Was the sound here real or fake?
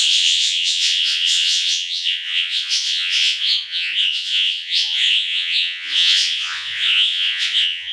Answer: fake